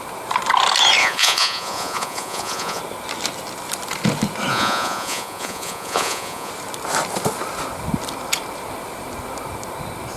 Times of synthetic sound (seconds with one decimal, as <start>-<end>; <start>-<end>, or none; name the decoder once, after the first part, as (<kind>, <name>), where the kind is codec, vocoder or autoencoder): 1.0-2.8 (vocoder, Vocos); 4.5-6.5